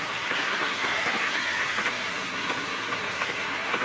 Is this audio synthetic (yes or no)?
yes